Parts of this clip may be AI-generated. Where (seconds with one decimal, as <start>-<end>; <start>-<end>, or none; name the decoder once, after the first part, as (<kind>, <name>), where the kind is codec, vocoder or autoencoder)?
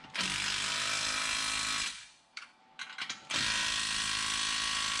1.9-2.6 (codec, SNAC)